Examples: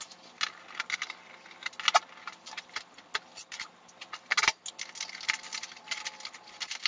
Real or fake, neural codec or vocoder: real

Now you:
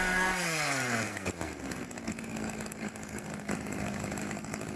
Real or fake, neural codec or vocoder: fake, codec, SNAC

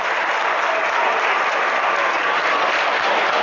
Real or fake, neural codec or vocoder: real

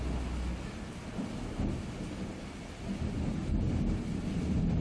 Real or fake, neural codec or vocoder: real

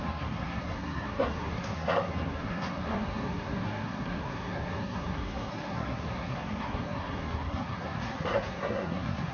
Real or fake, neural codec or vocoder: fake, codec, SNAC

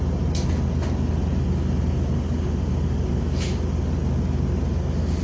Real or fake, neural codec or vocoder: real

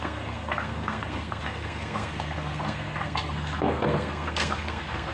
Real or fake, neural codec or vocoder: fake, codec, SNAC